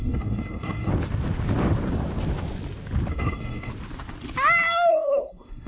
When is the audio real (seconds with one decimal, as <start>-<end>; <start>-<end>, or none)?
0.9-3.1; 3.7-4.9